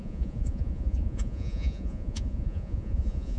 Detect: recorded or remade remade